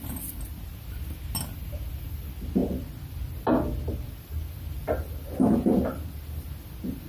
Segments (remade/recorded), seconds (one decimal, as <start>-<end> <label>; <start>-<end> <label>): 0.0-7.1 recorded